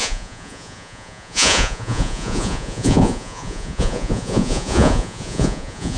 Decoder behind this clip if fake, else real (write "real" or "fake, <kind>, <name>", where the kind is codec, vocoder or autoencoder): fake, vocoder, Vocos